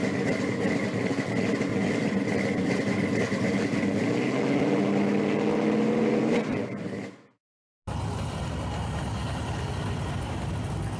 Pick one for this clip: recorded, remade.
recorded